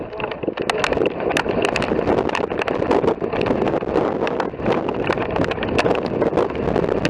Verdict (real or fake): real